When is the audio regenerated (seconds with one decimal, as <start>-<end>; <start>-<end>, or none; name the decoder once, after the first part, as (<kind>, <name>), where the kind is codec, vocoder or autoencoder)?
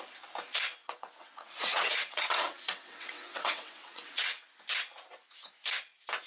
0.8-4.5 (vocoder, WaveNeXt)